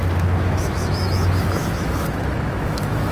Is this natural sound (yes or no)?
no